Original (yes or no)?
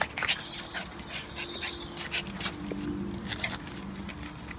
yes